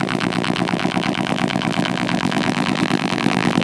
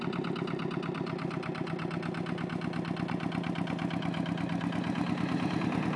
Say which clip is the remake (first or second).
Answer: first